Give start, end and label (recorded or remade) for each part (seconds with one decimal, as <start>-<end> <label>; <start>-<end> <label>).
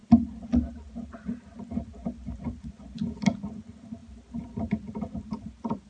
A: 0.0-5.9 recorded